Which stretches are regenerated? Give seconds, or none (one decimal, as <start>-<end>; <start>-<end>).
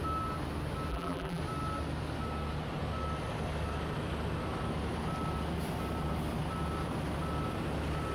0.9-1.4